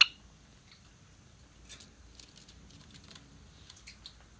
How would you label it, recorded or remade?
recorded